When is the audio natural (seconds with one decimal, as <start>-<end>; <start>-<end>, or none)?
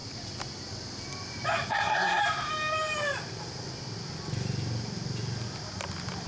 0.0-1.7; 2.2-6.3